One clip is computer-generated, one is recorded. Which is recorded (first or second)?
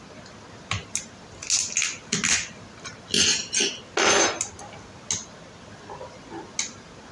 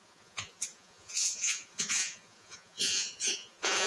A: first